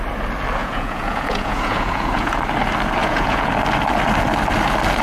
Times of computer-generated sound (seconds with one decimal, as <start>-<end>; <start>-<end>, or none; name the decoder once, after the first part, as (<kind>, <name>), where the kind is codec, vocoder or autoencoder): 0.6-2.4 (vocoder, Vocos); 3.0-3.5